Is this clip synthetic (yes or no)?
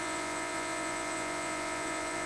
yes